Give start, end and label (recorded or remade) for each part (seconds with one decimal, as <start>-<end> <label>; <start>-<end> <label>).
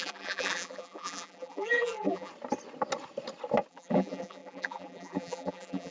0.0-2.3 remade; 2.3-3.7 recorded; 3.7-5.9 remade